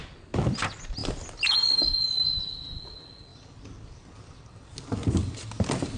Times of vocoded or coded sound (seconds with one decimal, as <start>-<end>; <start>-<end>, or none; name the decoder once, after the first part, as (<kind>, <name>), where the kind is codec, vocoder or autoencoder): none